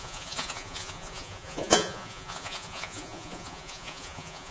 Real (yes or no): no